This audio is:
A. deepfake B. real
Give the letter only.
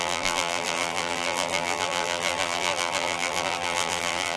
A